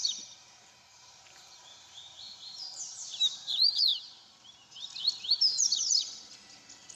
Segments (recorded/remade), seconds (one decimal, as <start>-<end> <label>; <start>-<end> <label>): 0.0-0.9 recorded; 0.9-3.5 remade; 3.5-7.0 recorded